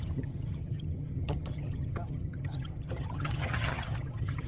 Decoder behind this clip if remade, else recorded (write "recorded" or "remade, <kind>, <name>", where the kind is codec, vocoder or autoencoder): remade, vocoder, HiFi-GAN